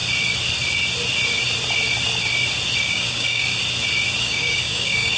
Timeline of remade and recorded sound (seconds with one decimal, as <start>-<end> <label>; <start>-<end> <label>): 0.0-2.8 recorded; 2.8-3.5 remade; 3.5-4.2 recorded; 4.2-5.2 remade